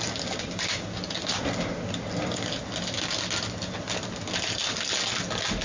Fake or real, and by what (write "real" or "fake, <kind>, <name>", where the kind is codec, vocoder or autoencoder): real